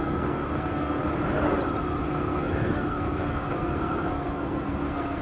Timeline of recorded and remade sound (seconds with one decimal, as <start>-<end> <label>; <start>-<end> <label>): 0.0-1.0 remade; 1.0-2.1 recorded; 2.1-5.2 remade